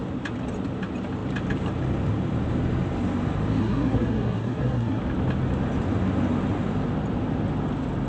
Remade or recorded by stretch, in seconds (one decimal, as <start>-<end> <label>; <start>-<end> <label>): 0.0-3.6 recorded; 3.6-5.0 remade; 5.0-8.1 recorded